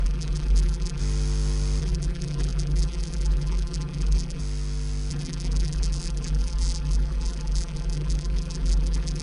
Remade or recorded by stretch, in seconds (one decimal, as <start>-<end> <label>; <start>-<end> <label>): 0.0-1.0 remade; 1.0-1.8 recorded; 1.8-4.4 remade; 4.4-5.1 recorded; 5.1-9.2 remade